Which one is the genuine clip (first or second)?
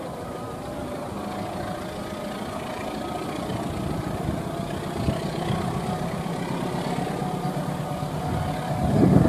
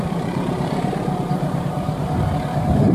first